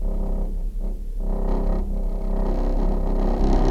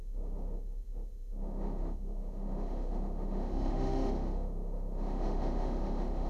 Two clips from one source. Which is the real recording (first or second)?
first